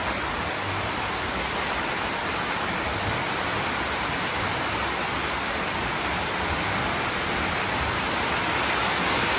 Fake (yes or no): no